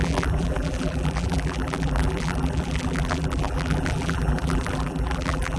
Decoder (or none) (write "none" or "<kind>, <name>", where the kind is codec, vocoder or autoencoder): vocoder, BigVGAN v2